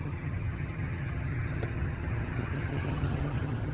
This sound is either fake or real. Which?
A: fake